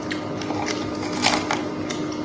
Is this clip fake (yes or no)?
no